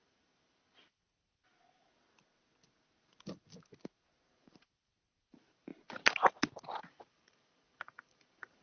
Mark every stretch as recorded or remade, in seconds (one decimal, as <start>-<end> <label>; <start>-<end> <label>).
0.0-1.5 remade; 1.5-4.5 recorded; 4.5-5.7 remade; 5.7-6.8 recorded; 6.8-8.6 remade